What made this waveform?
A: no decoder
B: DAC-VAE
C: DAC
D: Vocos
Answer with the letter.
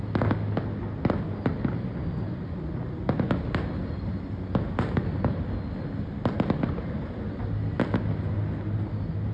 A